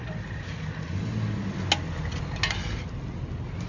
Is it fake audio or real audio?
real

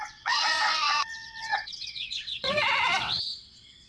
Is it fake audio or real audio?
fake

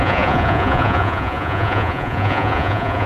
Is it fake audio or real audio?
fake